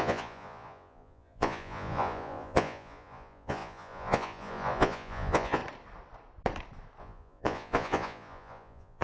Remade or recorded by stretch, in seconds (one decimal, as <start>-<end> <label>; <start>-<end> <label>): 0.0-5.6 remade; 5.6-7.0 recorded; 7.0-9.0 remade